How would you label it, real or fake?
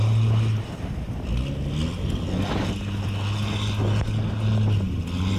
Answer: real